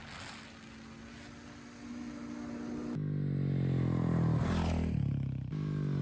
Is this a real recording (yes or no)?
yes